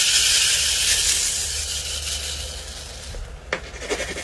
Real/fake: real